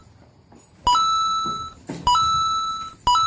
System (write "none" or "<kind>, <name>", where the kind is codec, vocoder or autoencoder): none